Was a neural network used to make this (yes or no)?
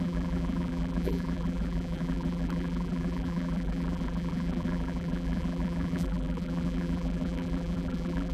yes